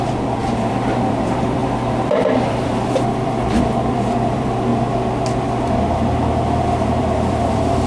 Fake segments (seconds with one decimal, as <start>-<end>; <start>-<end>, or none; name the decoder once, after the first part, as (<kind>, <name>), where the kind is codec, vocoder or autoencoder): 0.0-4.7 (vocoder, BigVGAN v2); 6.6-7.9